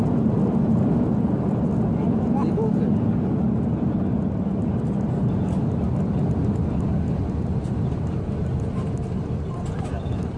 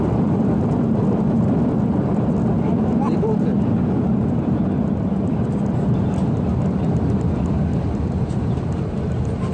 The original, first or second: first